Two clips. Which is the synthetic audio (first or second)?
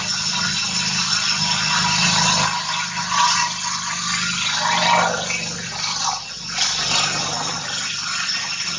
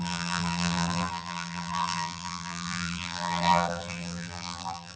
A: second